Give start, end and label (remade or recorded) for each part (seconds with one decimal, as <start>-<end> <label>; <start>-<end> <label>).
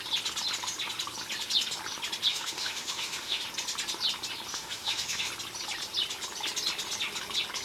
0.0-2.3 recorded; 2.3-3.4 remade; 3.4-4.5 recorded; 4.5-5.3 remade; 5.3-7.6 recorded